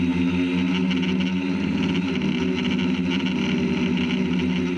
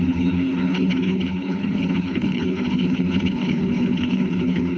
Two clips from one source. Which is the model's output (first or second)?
second